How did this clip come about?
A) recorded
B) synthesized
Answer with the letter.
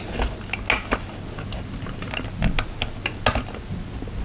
A